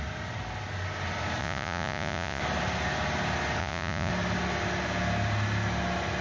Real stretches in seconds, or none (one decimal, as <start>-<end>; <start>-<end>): 0.0-1.4; 2.4-3.6; 4.1-6.2